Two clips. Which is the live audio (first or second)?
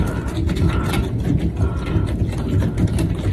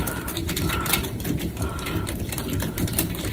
first